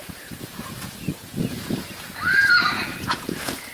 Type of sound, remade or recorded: remade